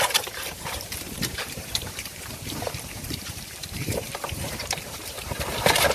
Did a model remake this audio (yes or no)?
yes